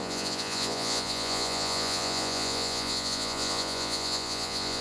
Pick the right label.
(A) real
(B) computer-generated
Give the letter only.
B